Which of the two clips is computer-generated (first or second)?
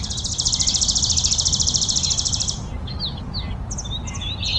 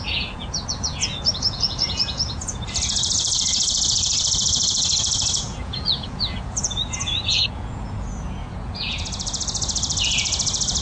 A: second